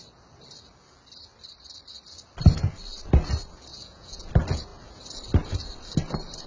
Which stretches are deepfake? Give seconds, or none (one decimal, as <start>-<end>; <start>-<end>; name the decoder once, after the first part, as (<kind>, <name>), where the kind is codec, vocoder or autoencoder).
3.7-4.3 (vocoder, Vocos)